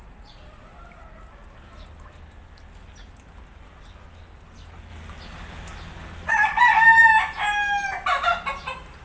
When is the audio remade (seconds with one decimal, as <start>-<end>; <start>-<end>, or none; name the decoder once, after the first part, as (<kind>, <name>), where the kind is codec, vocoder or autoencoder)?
none